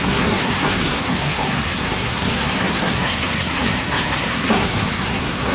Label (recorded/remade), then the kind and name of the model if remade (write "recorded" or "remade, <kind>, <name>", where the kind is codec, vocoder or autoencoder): remade, codec, SNAC